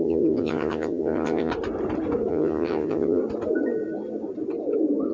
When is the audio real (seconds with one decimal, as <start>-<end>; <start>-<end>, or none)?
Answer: 1.5-2.3; 3.2-5.1